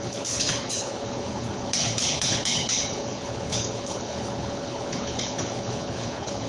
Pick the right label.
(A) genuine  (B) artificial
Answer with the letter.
B